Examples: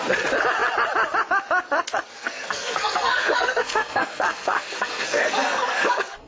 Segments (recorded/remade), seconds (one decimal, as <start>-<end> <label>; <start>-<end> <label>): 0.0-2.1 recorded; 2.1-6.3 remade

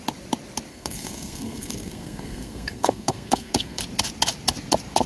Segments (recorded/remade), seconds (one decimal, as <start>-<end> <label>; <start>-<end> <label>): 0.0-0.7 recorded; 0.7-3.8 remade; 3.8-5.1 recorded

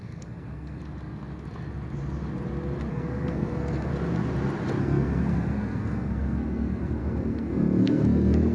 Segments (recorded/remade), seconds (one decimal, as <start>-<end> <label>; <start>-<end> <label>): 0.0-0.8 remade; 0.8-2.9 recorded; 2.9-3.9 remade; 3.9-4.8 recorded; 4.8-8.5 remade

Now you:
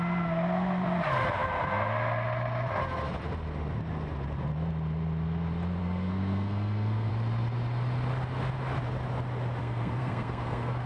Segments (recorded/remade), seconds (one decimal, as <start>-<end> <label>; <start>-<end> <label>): 0.0-5.8 recorded; 5.8-7.1 remade; 7.1-9.6 recorded; 9.6-10.9 remade

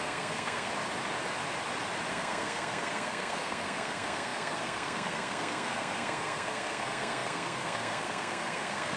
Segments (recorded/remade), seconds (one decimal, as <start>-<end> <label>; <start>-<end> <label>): 0.0-0.7 remade; 0.7-2.1 recorded; 2.1-9.0 remade